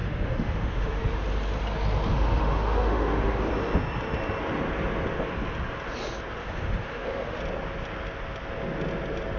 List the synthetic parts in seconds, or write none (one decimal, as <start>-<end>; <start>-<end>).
0.0-1.0; 2.1-3.5; 6.4-7.4